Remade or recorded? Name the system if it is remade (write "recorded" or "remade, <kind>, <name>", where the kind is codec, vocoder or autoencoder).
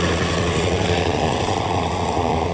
remade, vocoder, Vocos